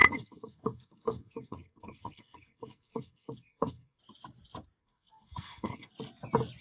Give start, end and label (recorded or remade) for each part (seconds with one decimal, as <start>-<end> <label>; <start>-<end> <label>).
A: 0.0-4.0 remade; 4.0-4.8 recorded; 4.8-5.9 remade; 5.9-6.6 recorded

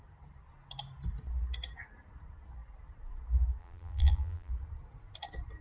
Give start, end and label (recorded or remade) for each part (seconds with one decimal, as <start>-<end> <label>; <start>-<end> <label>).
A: 0.0-3.6 recorded; 3.6-4.5 remade; 4.5-5.6 recorded

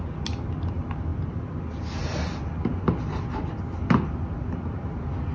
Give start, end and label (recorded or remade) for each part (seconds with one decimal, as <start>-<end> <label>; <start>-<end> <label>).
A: 0.0-5.3 recorded

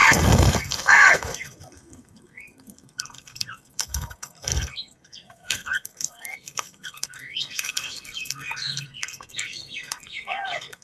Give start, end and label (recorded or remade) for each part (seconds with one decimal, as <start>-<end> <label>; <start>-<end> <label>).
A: 0.0-10.8 remade

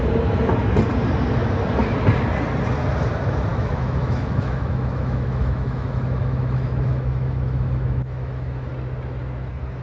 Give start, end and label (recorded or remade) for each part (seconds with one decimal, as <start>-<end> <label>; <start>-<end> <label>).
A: 0.0-3.5 recorded; 3.5-8.7 remade; 8.7-9.8 recorded

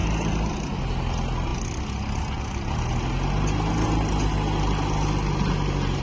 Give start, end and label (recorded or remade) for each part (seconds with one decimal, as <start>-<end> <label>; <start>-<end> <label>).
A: 0.0-6.0 recorded

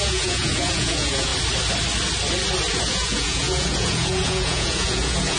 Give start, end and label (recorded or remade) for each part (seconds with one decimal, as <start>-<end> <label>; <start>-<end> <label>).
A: 0.0-1.3 remade; 1.3-2.8 recorded; 2.8-5.4 remade